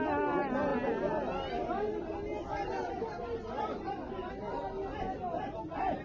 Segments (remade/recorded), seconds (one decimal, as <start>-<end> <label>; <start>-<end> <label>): 0.0-6.0 recorded